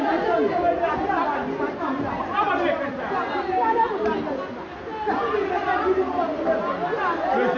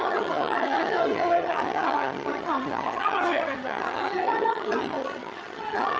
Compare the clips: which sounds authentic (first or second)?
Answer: first